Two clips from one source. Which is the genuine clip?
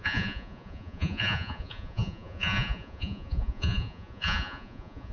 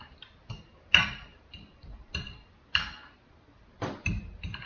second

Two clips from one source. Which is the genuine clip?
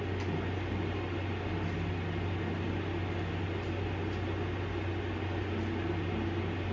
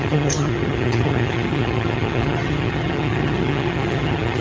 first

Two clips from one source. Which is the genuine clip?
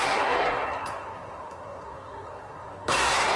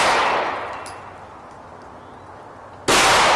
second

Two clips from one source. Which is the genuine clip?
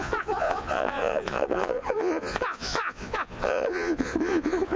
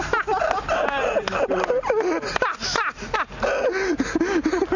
second